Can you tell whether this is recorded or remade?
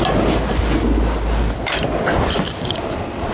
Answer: recorded